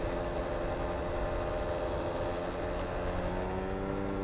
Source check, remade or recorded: recorded